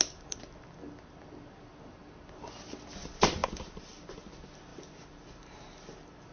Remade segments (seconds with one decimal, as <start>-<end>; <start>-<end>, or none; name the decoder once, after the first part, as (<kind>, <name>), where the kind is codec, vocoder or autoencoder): none